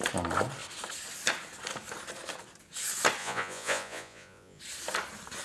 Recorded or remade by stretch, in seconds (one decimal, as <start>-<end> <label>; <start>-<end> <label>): 0.0-3.2 recorded; 3.2-4.6 remade; 4.6-5.4 recorded